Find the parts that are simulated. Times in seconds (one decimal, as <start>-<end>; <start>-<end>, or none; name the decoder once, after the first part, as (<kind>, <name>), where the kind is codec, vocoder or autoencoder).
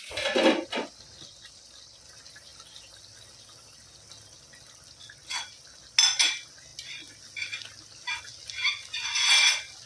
none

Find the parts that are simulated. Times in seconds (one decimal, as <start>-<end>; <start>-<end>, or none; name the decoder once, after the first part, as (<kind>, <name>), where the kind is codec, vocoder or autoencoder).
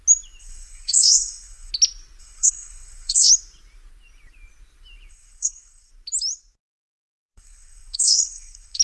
0.4-1.7 (codec, SNAC); 2.2-3.3; 5.1-5.9; 6.8-8.8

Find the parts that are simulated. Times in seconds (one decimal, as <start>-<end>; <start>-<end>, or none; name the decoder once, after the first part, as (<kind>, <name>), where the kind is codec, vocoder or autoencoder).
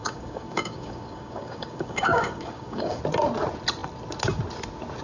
0.0-3.0 (codec, DAC)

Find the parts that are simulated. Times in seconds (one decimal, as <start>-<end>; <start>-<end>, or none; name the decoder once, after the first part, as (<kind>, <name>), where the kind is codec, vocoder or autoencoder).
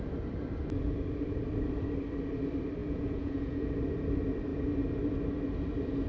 2.8-3.6 (vocoder, Vocos)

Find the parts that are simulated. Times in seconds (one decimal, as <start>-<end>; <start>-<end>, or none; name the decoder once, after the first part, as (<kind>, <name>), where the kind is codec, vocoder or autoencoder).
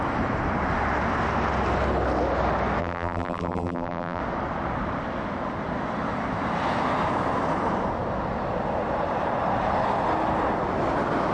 2.8-4.2 (vocoder, BigVGAN v2)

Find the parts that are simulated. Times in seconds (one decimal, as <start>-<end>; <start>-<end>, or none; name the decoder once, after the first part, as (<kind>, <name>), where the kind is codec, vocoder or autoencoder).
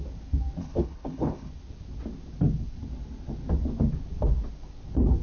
0.6-1.5 (codec, HILCodec)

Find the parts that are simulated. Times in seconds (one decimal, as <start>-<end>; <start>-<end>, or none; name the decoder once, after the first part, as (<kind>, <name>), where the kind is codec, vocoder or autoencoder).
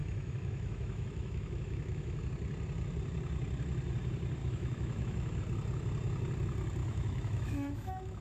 0.0-2.2 (autoencoder, DAC-VAE); 4.4-5.4; 6.8-8.2